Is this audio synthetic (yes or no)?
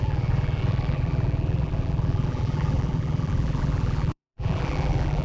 yes